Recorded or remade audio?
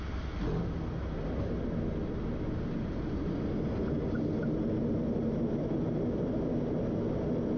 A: recorded